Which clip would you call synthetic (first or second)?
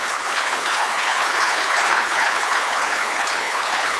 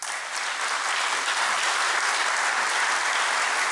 first